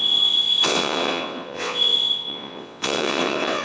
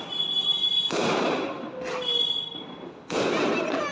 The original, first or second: second